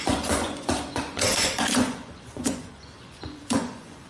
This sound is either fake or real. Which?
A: fake